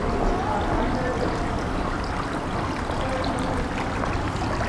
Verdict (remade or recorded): recorded